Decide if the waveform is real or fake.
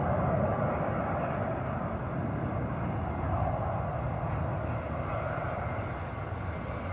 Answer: real